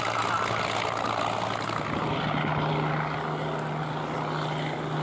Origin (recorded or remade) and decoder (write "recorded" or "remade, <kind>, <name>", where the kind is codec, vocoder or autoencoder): recorded